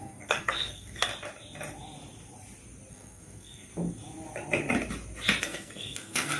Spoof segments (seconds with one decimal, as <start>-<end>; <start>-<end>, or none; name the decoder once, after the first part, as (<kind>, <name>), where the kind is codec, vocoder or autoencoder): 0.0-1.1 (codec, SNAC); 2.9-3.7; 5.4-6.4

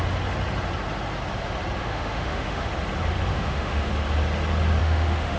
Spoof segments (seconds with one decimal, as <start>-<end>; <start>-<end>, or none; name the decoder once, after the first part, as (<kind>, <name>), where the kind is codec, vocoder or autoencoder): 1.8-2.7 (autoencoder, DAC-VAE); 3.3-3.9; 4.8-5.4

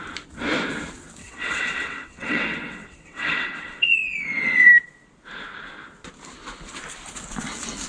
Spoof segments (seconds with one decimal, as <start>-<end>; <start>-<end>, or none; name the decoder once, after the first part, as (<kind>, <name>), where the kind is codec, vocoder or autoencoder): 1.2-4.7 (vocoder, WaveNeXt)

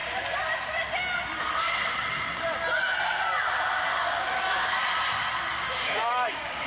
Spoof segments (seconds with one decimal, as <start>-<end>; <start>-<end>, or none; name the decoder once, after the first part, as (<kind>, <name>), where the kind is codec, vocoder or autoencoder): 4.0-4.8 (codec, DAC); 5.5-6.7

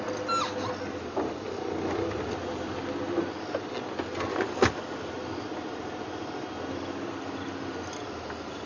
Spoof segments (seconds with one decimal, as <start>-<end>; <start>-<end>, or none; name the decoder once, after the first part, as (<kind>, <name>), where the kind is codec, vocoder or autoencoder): 4.3-5.1 (codec, DAC)

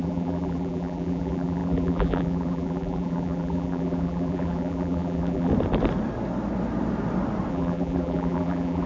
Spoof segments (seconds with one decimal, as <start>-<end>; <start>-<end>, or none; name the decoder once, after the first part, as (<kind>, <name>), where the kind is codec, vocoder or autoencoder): 0.0-5.5 (vocoder, BigVGAN v2); 7.5-8.9